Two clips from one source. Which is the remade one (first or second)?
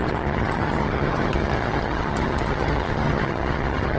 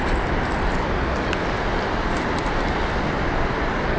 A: first